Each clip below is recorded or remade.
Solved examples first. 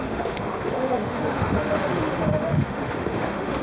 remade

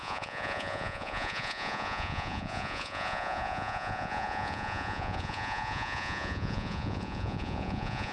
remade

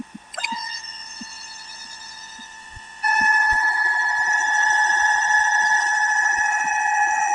remade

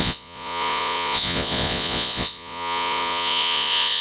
remade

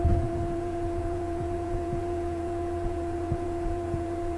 remade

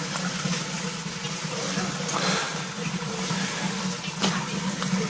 recorded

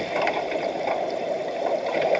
remade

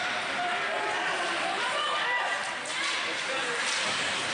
recorded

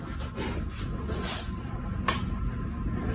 recorded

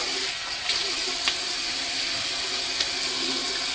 recorded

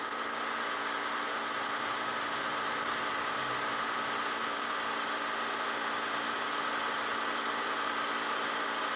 recorded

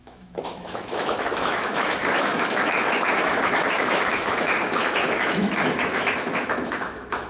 remade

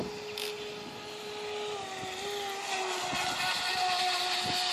recorded